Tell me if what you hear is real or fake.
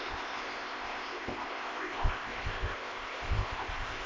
fake